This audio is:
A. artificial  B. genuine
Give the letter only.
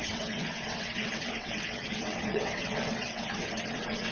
A